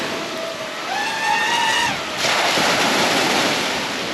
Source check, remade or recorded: recorded